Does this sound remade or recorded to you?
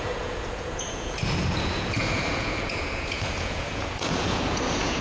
remade